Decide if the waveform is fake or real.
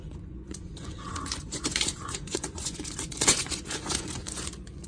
fake